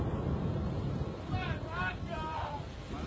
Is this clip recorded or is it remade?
recorded